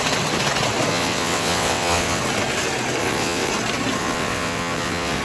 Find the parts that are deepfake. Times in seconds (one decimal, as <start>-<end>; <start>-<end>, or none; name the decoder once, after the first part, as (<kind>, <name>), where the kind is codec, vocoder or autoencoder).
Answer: 0.9-2.2 (vocoder, WaveNeXt); 3.0-3.5; 4.0-5.2